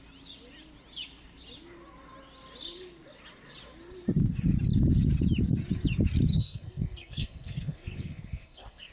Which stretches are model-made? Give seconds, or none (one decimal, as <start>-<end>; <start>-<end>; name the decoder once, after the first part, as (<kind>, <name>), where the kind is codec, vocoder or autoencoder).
6.3-8.9 (codec, SNAC)